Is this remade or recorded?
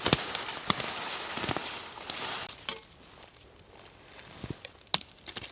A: recorded